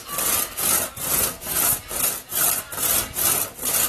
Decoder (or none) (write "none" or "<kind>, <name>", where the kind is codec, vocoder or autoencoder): none